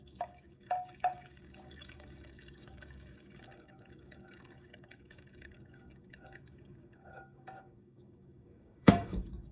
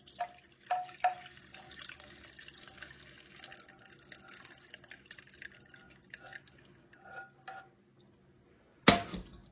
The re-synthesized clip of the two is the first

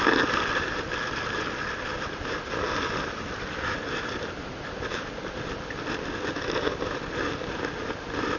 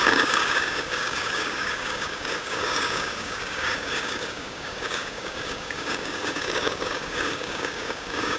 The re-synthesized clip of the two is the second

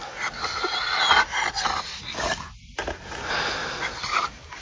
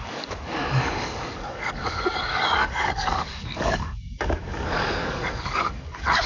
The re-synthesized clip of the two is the second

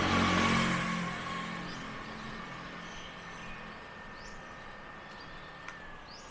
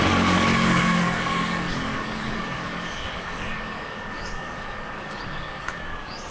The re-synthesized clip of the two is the second